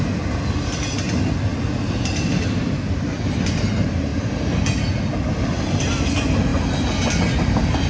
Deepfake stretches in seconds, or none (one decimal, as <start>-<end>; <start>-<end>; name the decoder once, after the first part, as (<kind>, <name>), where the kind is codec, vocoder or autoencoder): none